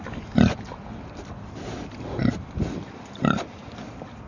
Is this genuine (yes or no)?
yes